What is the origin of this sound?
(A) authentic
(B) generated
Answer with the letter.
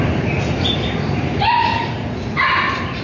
A